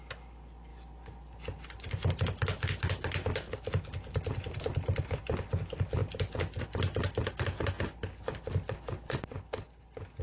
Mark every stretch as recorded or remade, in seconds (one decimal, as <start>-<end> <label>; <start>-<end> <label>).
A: 0.0-10.2 recorded